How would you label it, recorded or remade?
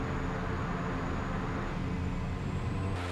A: recorded